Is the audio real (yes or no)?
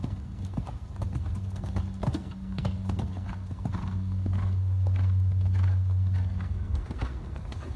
no